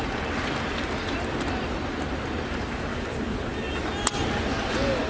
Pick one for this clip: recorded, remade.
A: recorded